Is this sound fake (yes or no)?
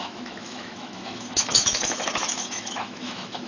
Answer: yes